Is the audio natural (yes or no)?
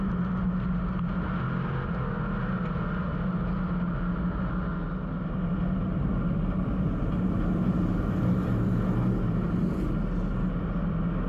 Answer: yes